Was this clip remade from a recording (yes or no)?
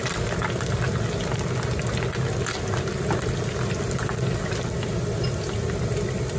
no